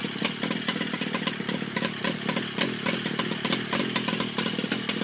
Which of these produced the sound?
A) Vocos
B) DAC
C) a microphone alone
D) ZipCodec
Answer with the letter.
C